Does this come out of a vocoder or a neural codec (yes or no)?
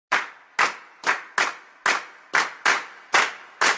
no